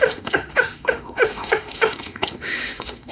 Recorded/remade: remade